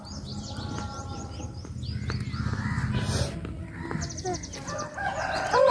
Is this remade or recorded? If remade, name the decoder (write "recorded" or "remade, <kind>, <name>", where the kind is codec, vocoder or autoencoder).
recorded